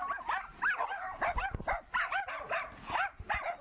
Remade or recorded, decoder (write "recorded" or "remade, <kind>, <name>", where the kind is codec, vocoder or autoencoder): recorded